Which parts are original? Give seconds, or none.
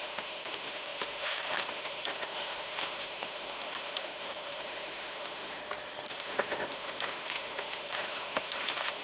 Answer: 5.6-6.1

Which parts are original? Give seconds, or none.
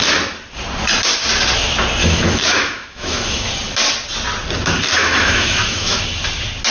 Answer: 0.0-2.0; 3.5-5.0; 6.0-6.7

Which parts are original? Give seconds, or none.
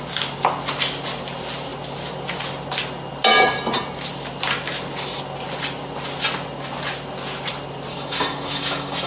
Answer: 0.0-7.9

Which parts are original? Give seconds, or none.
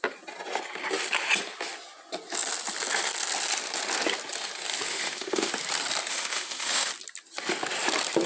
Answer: 0.0-4.9; 5.5-6.1; 6.9-8.3